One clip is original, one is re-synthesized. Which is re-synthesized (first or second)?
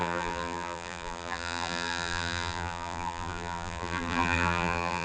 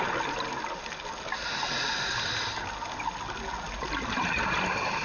first